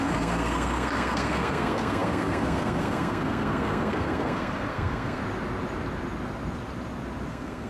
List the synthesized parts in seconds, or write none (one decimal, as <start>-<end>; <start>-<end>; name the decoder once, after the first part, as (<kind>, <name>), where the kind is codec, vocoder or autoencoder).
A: 0.0-5.2 (codec, SNAC); 7.3-7.7